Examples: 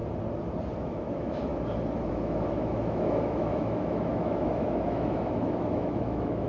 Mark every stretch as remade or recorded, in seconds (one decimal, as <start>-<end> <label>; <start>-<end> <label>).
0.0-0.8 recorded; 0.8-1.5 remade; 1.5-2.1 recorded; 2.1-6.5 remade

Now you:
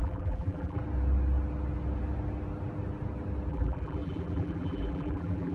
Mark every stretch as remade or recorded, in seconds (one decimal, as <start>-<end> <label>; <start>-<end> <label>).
0.0-0.8 remade; 0.8-3.5 recorded; 3.5-5.5 remade

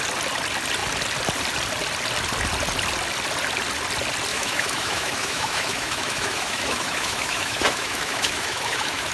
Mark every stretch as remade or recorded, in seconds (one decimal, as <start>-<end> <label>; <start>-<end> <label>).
0.0-4.3 recorded; 4.3-9.1 remade

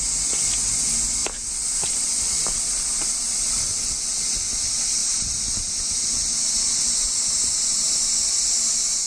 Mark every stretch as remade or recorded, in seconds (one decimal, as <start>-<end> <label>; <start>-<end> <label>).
0.0-1.2 recorded; 1.2-3.8 remade; 3.8-5.0 recorded; 5.0-5.7 remade; 5.7-9.1 recorded

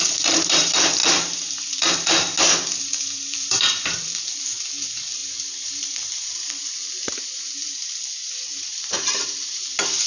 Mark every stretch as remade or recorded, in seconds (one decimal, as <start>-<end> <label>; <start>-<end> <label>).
0.0-10.1 remade

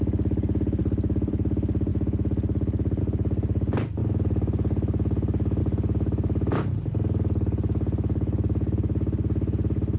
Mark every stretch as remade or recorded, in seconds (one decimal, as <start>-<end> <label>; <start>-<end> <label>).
0.0-10.0 recorded

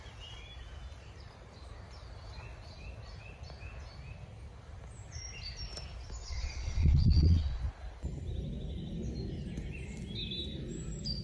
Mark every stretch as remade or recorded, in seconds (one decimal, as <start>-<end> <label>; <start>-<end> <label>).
0.0-6.2 recorded; 6.2-7.6 remade; 7.6-11.2 recorded